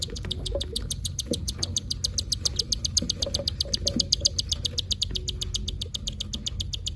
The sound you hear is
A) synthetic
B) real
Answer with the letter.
B